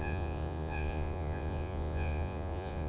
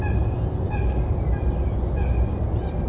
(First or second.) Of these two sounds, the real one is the second